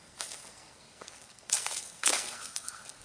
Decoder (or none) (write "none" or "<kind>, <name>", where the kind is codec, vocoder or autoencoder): codec, SNAC